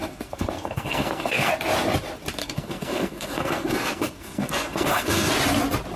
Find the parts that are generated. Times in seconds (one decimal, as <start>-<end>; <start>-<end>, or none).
0.0-1.5; 2.4-5.3